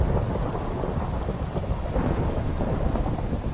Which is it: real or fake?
real